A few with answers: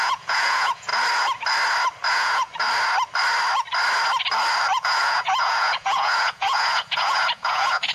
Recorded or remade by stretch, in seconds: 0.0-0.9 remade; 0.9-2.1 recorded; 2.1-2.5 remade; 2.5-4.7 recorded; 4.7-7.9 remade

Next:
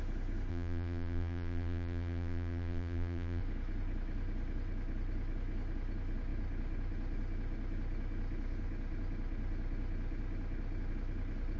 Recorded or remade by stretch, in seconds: 0.0-0.5 recorded; 0.5-3.4 remade; 3.4-11.6 recorded